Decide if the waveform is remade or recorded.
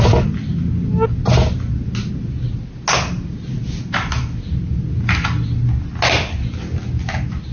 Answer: recorded